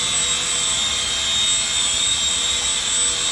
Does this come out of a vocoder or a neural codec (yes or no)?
no